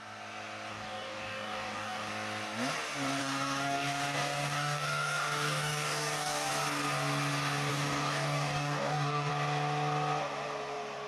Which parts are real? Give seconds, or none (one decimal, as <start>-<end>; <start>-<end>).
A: 0.0-0.7; 2.1-3.2; 6.5-7.7; 9.3-11.1